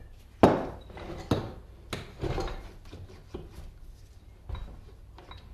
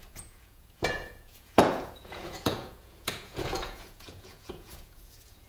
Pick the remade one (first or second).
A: second